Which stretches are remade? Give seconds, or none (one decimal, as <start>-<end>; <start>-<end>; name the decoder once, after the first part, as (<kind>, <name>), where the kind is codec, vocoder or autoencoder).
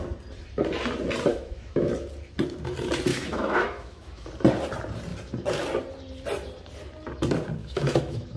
1.3-1.9 (autoencoder, DAC-VAE); 3.1-4.3; 7.6-8.4